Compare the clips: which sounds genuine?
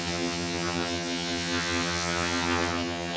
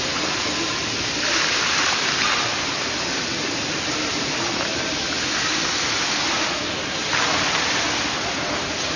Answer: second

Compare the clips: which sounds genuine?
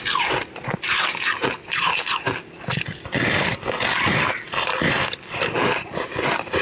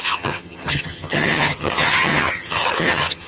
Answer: first